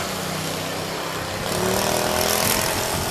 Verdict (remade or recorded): recorded